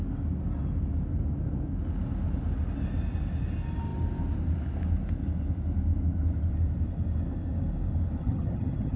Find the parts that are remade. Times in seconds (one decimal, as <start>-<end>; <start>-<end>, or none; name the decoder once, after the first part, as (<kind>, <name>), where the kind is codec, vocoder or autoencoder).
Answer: 8.2-9.0 (vocoder, HiFi-GAN)